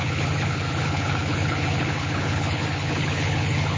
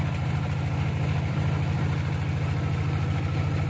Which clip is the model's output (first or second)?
first